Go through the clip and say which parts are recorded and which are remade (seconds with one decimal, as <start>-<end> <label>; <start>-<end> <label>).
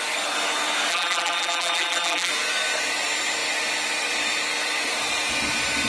0.0-0.9 recorded; 0.9-2.3 remade; 2.3-5.9 recorded